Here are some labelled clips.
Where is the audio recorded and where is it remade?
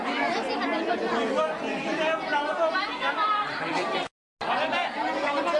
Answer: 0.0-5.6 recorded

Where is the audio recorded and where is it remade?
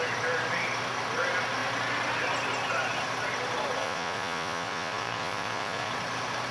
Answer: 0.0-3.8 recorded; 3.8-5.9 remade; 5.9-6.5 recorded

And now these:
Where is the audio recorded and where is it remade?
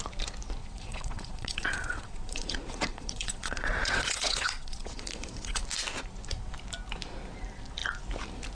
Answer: 0.0-0.6 recorded; 0.6-5.6 remade; 5.6-8.5 recorded